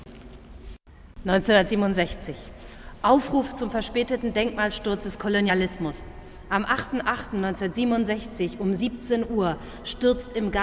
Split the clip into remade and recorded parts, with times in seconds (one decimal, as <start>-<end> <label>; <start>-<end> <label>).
0.0-10.6 recorded